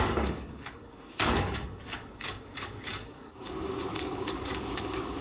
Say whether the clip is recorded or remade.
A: remade